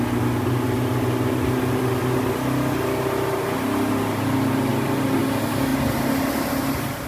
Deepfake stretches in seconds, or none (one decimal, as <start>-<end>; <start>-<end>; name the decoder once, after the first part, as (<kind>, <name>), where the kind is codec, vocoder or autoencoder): none